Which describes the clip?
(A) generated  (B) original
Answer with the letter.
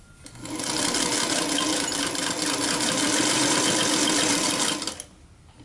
B